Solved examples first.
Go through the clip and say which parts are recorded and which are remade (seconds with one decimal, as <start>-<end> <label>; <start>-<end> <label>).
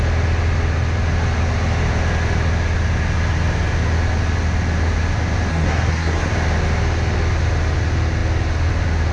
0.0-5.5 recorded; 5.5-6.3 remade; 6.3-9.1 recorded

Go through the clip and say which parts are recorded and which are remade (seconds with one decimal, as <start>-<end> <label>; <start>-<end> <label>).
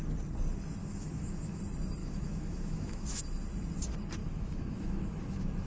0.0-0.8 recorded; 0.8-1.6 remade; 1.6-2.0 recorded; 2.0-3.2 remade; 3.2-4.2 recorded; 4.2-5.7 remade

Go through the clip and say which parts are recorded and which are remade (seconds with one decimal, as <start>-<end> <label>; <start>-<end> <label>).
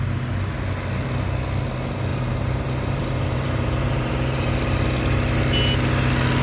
0.0-2.1 recorded; 2.1-4.5 remade; 4.5-6.4 recorded